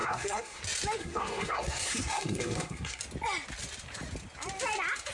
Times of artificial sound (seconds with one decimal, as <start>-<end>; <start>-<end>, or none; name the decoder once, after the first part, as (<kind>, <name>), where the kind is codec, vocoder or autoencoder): 0.0-0.6 (codec, SNAC); 1.0-3.0

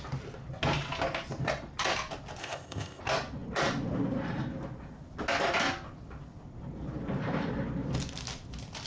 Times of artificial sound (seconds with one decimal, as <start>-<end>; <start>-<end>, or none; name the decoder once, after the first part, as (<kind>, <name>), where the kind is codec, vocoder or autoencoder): 2.4-3.0 (codec, ZipCodec)

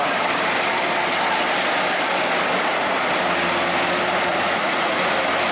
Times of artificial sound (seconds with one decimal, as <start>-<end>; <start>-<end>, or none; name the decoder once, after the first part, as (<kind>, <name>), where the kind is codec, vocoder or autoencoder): 4.3-5.1 (vocoder, Vocos)

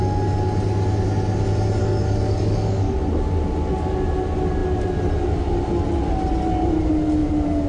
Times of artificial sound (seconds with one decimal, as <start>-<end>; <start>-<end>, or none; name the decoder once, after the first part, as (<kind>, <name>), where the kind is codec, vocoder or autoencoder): 1.8-3.1 (codec, DAC)

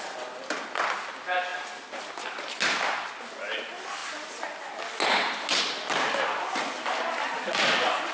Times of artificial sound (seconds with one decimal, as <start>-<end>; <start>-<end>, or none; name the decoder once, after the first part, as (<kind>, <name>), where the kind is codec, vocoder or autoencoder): none